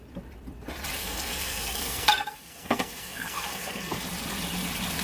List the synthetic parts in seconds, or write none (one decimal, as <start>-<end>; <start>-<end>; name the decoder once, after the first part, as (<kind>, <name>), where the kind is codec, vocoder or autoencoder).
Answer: 1.0-4.0 (codec, SNAC)